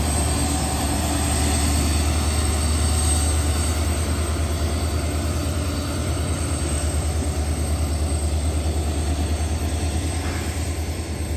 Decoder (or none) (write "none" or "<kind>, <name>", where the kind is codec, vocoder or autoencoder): none